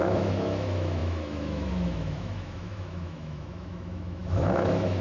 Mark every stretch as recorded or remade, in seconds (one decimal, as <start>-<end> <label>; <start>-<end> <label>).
0.0-5.0 remade